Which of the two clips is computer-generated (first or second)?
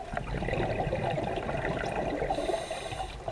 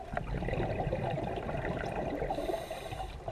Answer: second